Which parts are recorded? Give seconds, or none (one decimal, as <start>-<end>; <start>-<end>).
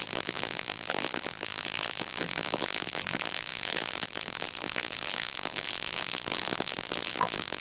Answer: none